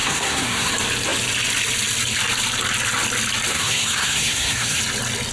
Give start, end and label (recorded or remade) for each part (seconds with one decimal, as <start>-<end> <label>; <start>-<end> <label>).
0.0-0.7 remade; 0.7-3.5 recorded; 3.5-4.8 remade; 4.8-5.3 recorded